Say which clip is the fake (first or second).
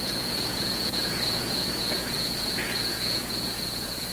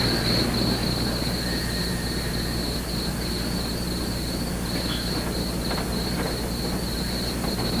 first